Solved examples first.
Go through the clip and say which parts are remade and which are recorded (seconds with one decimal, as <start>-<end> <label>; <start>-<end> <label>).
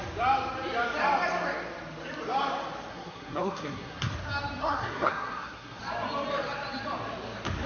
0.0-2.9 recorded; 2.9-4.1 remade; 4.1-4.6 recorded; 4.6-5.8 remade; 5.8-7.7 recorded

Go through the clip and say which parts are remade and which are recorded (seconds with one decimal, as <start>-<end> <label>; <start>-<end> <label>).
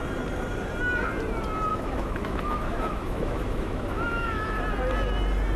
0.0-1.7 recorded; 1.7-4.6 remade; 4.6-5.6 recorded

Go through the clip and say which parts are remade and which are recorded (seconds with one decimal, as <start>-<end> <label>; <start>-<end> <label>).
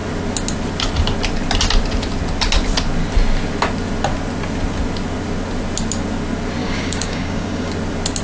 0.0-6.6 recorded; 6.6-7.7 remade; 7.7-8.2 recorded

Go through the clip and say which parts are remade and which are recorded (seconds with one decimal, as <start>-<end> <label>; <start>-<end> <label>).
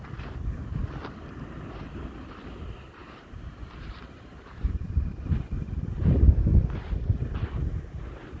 0.0-3.0 recorded; 3.0-5.3 remade; 5.3-8.4 recorded